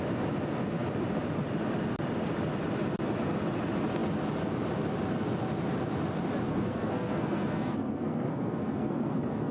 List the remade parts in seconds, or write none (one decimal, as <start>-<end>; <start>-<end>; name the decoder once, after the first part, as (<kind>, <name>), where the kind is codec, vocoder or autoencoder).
6.5-9.5 (codec, SNAC)